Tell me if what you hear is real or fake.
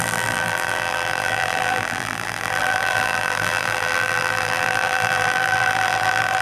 fake